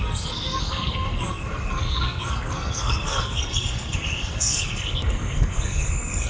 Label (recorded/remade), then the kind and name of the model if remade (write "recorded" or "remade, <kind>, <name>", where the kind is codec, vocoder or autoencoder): remade, codec, SNAC